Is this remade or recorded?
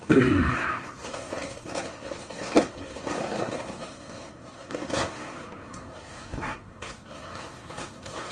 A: remade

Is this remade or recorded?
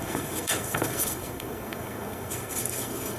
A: remade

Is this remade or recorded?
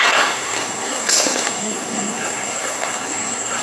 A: remade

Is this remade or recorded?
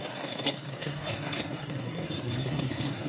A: remade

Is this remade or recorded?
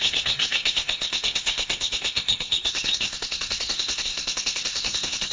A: remade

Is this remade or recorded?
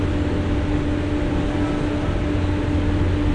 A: recorded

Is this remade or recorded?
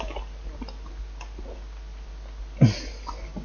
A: recorded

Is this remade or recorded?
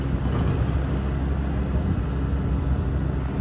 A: recorded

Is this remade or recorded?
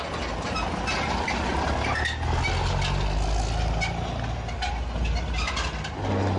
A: recorded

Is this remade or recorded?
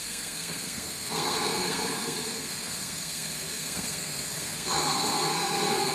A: remade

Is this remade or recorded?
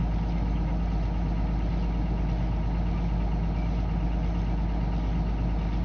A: recorded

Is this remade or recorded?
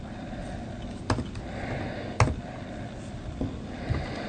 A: recorded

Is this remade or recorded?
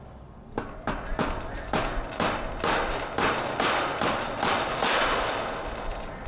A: recorded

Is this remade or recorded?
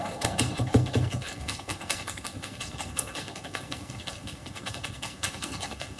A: remade